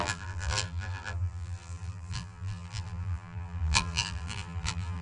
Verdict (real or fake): fake